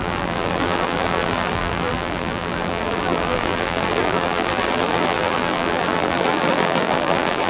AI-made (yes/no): yes